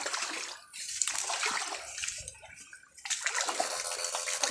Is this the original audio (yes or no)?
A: yes